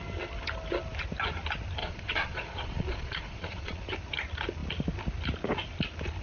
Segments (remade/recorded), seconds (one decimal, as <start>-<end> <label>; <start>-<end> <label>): 0.0-1.8 recorded; 1.8-3.8 remade; 3.8-6.2 recorded